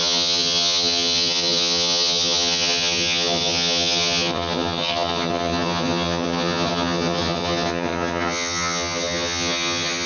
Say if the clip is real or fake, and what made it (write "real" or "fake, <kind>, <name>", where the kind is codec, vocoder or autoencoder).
fake, vocoder, HiFi-GAN